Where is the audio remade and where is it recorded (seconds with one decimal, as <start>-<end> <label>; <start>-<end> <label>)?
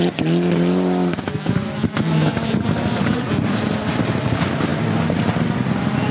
0.0-2.3 recorded; 2.3-3.3 remade; 3.3-6.1 recorded